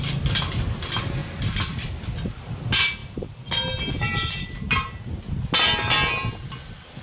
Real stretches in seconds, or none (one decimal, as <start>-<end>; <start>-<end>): 0.0-7.0